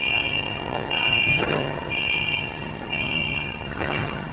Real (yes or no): no